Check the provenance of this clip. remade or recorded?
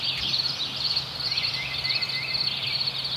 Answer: recorded